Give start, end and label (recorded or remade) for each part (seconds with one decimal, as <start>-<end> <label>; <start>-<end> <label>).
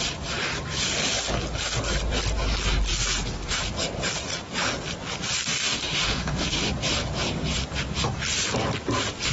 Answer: 0.0-5.5 recorded; 5.5-6.7 remade; 6.7-9.3 recorded